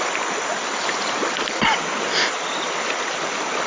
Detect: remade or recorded recorded